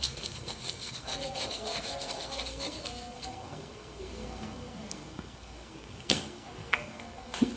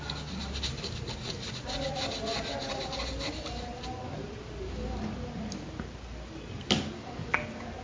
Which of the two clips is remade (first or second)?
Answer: first